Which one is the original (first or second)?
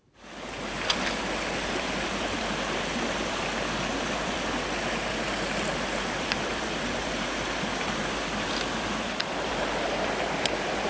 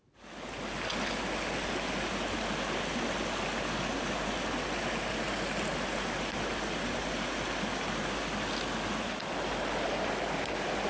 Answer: second